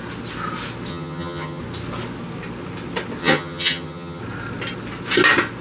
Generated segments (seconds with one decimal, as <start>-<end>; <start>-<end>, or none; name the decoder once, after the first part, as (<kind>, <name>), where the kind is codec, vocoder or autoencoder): 0.9-1.6 (vocoder, HiFi-GAN); 3.2-4.2